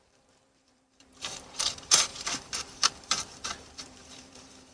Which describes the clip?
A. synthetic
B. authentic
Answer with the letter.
A